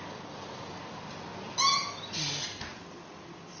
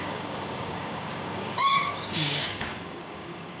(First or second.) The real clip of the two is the first